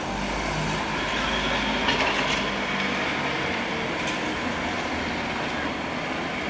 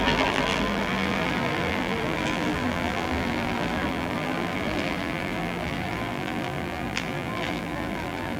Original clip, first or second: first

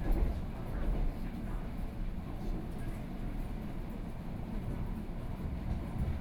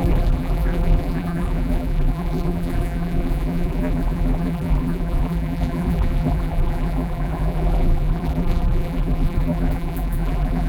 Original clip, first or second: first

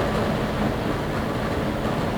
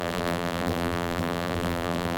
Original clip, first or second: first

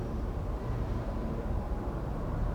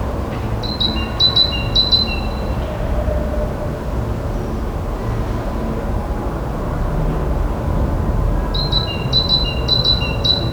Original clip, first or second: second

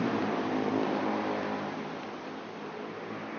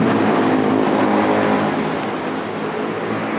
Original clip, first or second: second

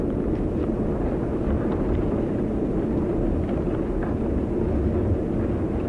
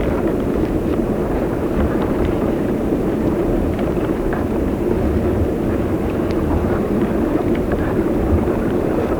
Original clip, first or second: first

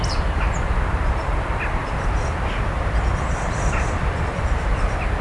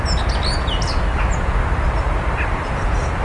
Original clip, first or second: second